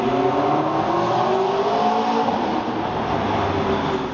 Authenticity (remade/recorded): recorded